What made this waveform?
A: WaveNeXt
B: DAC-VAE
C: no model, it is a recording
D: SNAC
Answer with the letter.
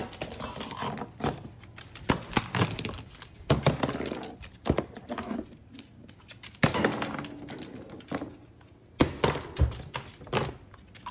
C